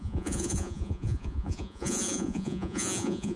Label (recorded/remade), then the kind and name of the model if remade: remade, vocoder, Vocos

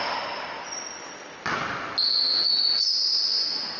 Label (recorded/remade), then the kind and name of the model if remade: recorded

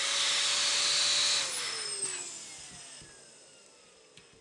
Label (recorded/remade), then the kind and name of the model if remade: recorded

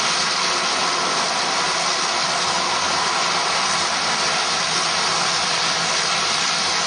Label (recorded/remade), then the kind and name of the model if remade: recorded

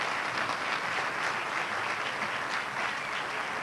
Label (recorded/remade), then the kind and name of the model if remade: recorded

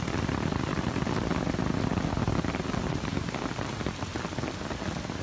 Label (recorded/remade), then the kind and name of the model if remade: recorded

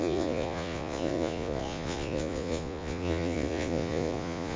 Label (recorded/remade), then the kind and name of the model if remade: remade, vocoder, Vocos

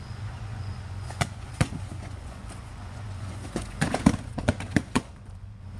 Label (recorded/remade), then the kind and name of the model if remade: remade, vocoder, Vocos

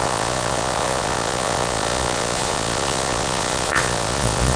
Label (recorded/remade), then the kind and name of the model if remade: remade, vocoder, Vocos